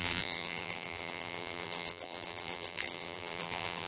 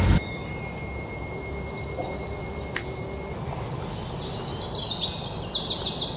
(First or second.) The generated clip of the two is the first